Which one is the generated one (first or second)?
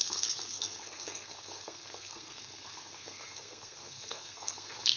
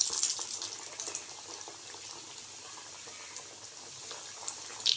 first